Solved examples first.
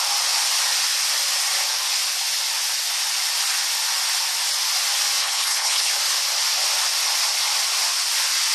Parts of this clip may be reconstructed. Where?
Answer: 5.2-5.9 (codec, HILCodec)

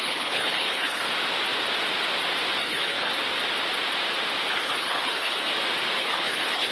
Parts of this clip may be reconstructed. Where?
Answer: 0.0-1.1 (codec, HILCodec); 2.6-3.1; 4.5-5.5; 6.0-6.7

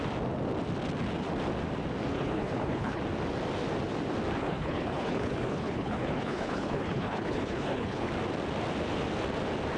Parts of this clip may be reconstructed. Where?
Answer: 2.1-3.0 (codec, HILCodec); 4.4-8.1

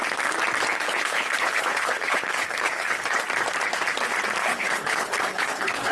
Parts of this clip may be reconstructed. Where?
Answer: 0.7-3.0 (codec, HILCodec); 4.4-5.9

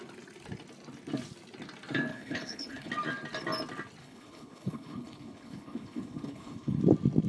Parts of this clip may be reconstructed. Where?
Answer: 2.1-2.9 (codec, HILCodec); 4.0-6.8

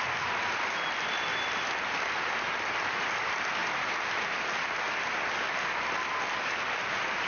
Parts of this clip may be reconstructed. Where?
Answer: none

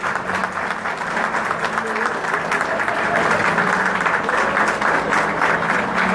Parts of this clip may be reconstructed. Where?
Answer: none

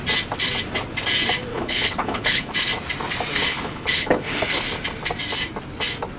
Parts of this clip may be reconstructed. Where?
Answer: 1.5-2.5 (codec, HILCodec); 3.5-4.4